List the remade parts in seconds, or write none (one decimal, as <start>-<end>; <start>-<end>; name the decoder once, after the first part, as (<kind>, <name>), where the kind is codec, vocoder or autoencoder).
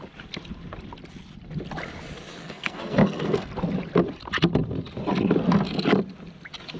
2.4-3.5 (codec, SNAC)